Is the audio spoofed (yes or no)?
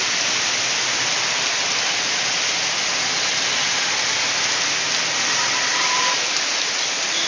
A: no